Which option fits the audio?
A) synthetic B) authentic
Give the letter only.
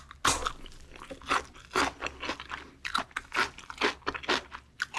B